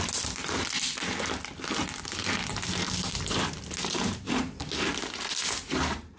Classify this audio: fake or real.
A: real